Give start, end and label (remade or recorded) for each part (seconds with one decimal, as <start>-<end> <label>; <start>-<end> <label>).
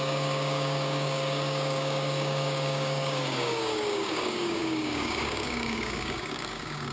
0.0-6.9 remade